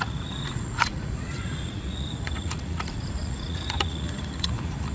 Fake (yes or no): yes